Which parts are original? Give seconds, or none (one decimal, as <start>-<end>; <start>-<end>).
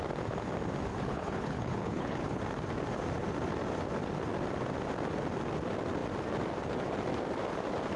0.0-0.9; 2.4-8.0